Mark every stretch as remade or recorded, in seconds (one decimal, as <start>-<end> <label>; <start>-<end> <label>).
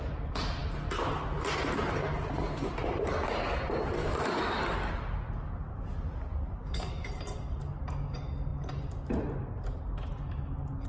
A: 0.0-4.0 recorded; 4.0-4.9 remade; 4.9-6.6 recorded; 6.6-7.1 remade; 7.1-10.9 recorded